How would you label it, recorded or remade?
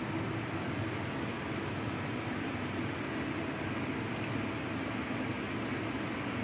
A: recorded